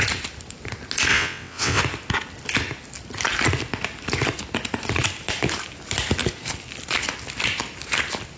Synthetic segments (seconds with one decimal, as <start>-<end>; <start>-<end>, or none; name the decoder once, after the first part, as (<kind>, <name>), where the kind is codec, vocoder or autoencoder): 1.1-1.8 (vocoder, WaveNeXt)